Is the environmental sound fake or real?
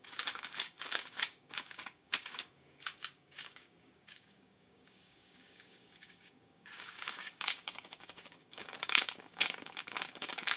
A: fake